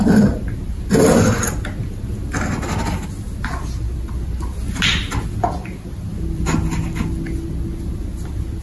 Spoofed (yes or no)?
no